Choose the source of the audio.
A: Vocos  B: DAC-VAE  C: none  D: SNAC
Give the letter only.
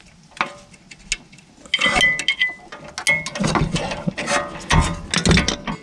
C